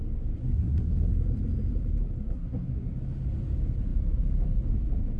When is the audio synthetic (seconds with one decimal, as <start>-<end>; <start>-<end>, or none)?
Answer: 0.4-1.1; 2.2-2.9

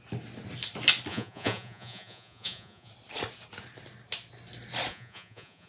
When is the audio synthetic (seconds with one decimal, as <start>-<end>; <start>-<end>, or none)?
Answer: 1.1-2.9; 4.9-5.7

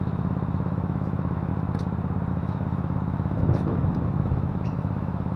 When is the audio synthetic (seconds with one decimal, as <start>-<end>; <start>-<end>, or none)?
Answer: 0.0-1.5; 2.3-5.4

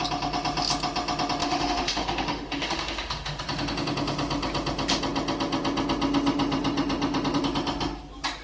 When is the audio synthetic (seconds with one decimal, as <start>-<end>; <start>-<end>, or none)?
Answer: 1.4-3.4

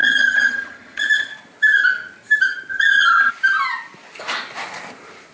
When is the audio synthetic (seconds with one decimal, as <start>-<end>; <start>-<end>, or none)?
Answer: 0.0-1.0; 2.7-3.3

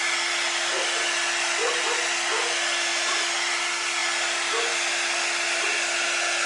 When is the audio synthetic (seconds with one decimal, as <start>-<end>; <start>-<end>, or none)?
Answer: none

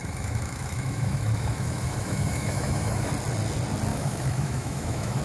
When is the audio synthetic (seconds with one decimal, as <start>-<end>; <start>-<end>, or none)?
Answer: 0.0-3.1; 3.9-5.2

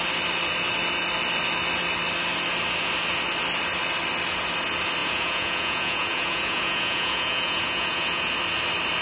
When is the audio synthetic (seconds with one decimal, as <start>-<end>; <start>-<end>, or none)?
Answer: 5.0-8.3